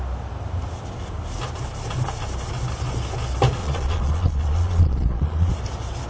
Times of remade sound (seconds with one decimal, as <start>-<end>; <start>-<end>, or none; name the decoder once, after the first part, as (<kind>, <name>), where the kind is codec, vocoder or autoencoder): 3.6-5.5 (vocoder, Vocos)